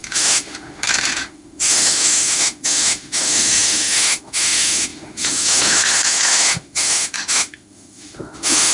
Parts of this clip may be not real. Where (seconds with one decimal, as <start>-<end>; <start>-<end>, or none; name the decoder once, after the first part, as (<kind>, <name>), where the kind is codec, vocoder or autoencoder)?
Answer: 0.0-8.7 (autoencoder, DAC-VAE)